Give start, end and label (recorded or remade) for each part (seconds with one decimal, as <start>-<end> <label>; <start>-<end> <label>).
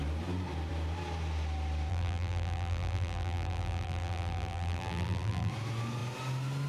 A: 0.0-1.9 recorded; 1.9-5.5 remade; 5.5-6.7 recorded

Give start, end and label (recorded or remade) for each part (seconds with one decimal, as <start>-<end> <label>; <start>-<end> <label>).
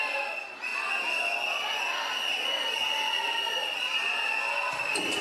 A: 0.0-5.2 recorded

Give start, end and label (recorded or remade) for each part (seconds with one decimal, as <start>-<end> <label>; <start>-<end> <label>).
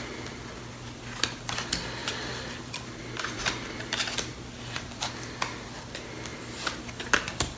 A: 0.0-2.0 recorded; 2.0-5.0 remade; 5.0-7.6 recorded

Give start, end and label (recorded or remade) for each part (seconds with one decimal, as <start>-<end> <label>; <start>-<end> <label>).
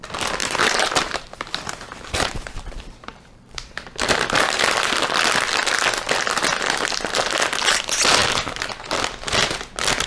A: 0.0-0.4 recorded; 0.4-3.7 remade; 3.7-10.1 recorded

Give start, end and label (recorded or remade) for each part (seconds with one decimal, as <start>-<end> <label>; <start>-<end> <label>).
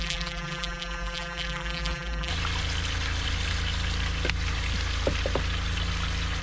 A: 0.0-2.3 remade; 2.3-6.4 recorded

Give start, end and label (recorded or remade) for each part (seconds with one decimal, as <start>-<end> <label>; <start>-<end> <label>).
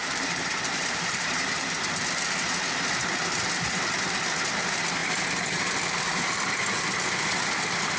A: 0.0-1.6 remade; 1.6-8.0 recorded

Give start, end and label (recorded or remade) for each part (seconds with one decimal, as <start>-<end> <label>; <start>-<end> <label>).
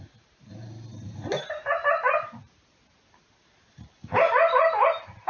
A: 0.0-5.3 recorded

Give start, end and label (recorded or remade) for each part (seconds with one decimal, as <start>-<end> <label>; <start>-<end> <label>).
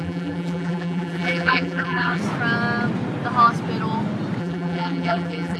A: 0.0-2.2 remade; 2.2-4.4 recorded; 4.4-5.6 remade